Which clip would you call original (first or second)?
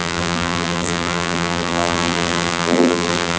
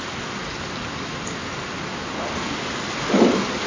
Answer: second